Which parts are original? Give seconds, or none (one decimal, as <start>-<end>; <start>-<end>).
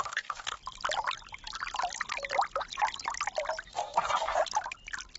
0.6-3.7; 4.4-5.2